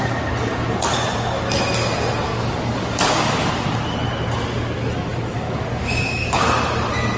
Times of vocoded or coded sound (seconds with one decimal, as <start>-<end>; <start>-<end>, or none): 2.3-3.5; 5.1-6.4

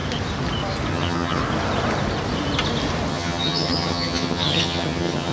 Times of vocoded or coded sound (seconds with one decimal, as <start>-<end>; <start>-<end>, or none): 0.9-1.4; 3.1-5.3

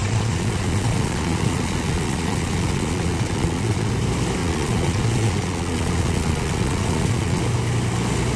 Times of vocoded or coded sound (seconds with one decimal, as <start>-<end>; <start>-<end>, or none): 0.0-3.9; 4.4-7.4

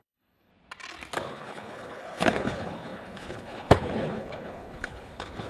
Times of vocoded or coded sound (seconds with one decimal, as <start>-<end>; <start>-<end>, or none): 0.0-0.5; 1.3-5.5

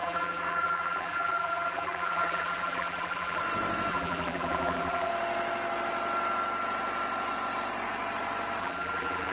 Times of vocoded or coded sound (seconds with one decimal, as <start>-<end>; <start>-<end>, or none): 0.0-3.4; 3.9-5.1; 8.6-9.3

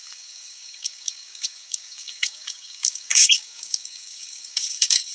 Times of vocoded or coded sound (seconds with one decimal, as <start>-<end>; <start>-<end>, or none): 0.0-5.1

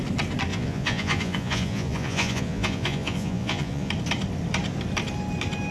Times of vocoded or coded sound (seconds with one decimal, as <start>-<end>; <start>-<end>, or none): 0.5-3.9